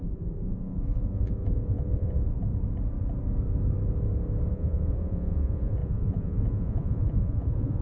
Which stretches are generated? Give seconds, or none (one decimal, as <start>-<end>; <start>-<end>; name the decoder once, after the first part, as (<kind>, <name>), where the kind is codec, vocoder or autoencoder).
0.0-2.5 (vocoder, Vocos); 4.5-7.8